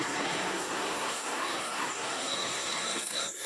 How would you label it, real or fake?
fake